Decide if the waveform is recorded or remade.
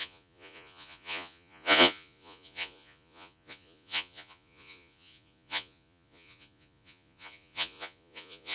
remade